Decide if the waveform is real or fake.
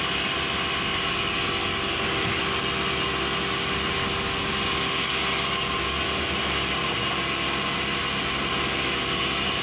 real